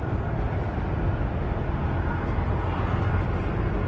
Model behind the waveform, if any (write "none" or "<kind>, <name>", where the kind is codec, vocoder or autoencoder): none